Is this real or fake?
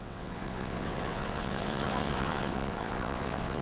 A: fake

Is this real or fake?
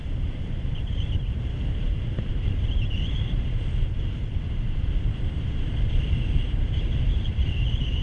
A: fake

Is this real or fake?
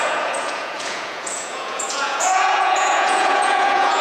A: fake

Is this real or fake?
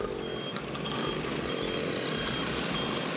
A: real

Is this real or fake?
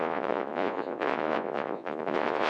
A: fake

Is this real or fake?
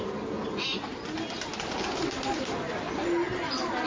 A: real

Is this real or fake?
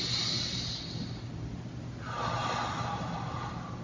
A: real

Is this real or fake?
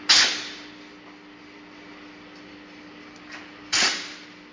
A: real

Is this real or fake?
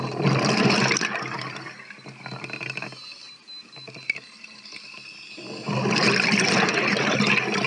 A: real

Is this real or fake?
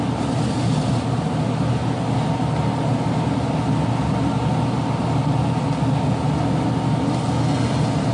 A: real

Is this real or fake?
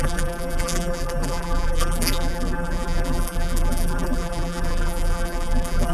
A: fake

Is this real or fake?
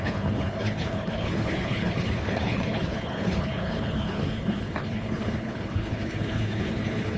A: fake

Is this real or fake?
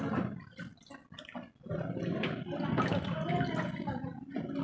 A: real